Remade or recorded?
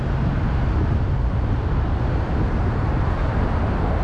recorded